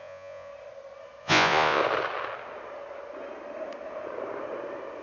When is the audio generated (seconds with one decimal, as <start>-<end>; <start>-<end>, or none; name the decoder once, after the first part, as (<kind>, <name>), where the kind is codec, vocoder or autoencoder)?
0.0-0.5 (vocoder, Vocos); 1.2-1.8